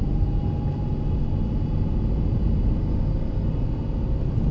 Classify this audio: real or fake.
real